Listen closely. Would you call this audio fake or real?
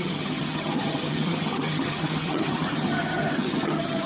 fake